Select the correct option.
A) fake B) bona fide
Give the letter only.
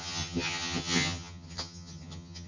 A